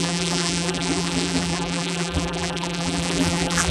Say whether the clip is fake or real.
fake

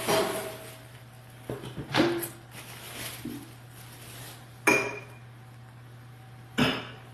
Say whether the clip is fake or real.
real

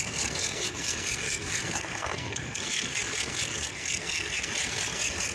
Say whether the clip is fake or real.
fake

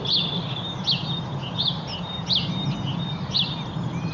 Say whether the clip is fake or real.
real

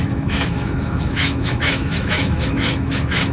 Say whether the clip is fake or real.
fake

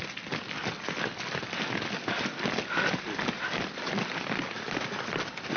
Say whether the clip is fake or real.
real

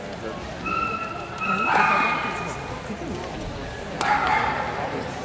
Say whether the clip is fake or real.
real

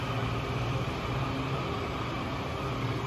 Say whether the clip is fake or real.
real